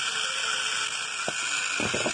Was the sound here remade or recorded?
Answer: recorded